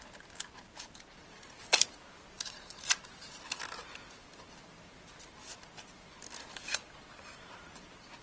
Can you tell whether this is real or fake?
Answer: real